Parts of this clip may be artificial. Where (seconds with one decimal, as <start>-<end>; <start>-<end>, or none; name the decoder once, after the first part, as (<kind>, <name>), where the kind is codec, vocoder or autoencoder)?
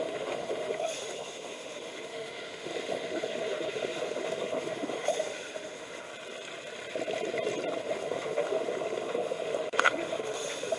0.0-6.1 (autoencoder, DAC-VAE); 7.8-10.8